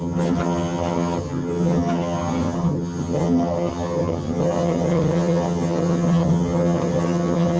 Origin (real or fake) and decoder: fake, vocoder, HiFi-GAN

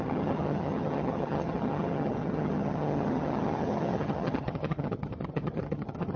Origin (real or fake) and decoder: fake, vocoder, HiFi-GAN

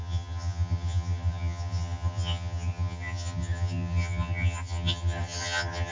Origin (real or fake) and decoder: fake, vocoder, HiFi-GAN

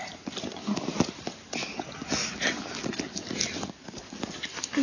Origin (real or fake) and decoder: real